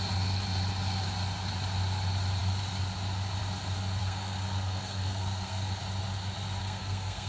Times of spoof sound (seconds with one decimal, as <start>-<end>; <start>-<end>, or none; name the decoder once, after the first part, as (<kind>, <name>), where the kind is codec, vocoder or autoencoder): 4.0-5.8 (codec, SNAC); 6.6-7.3